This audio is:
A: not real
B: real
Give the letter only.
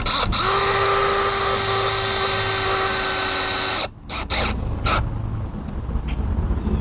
B